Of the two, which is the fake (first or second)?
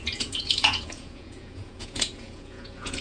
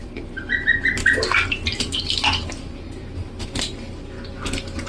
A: first